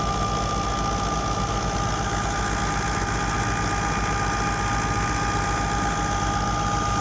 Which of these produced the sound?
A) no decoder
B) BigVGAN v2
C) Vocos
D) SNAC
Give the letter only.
A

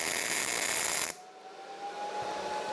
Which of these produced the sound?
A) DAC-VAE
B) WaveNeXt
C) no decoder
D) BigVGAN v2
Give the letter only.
C